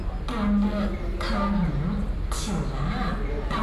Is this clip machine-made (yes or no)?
no